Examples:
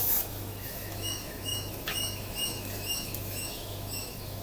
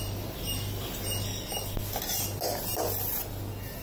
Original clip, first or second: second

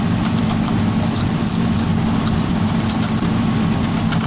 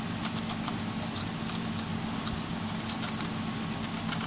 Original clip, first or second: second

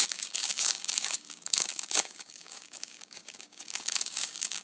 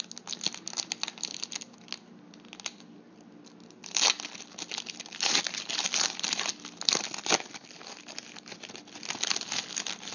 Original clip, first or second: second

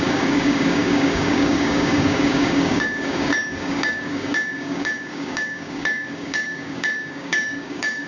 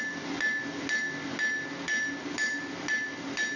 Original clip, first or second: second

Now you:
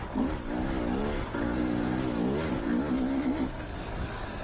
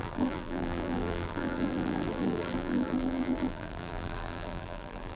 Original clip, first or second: first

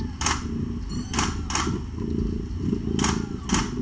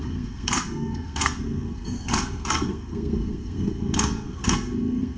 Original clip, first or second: first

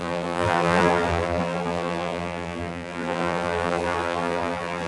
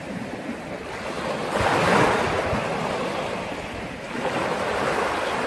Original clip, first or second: second